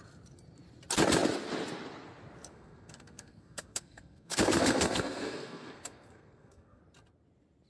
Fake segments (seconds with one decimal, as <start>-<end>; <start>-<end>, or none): 2.5-6.8